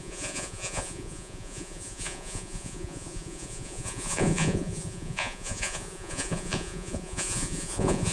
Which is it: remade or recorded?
remade